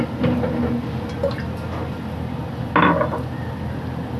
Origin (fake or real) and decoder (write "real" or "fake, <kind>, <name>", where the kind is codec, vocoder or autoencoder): real